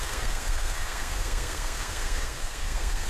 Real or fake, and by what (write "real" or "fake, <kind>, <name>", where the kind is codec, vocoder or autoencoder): fake, codec, SNAC